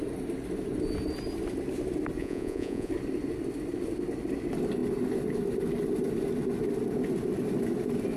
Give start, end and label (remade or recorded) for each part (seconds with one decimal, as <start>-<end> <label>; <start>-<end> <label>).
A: 0.0-2.2 recorded; 2.2-2.9 remade; 2.9-8.2 recorded